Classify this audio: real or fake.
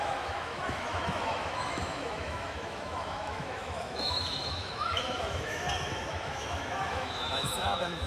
fake